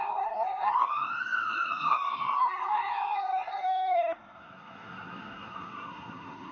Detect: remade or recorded remade